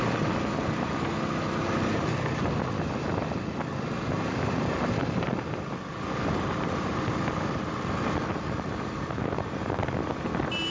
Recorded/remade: recorded